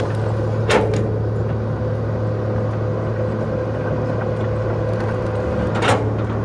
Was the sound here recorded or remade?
recorded